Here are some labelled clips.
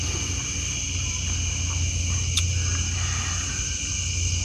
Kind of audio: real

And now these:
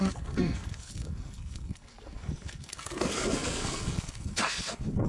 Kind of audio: fake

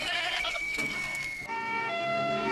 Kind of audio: fake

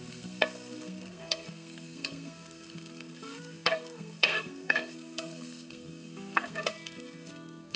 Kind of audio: fake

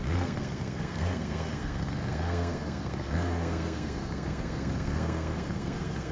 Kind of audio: fake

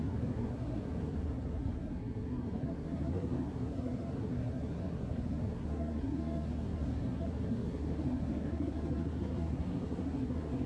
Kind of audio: fake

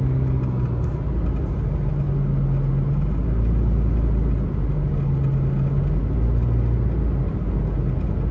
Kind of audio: real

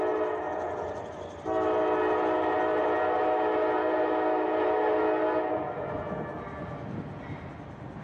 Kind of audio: real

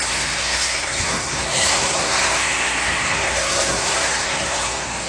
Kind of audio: fake